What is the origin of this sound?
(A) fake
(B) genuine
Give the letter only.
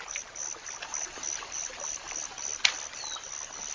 B